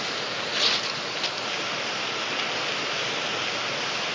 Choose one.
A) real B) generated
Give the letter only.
A